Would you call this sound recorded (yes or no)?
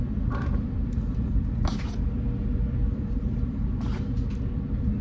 no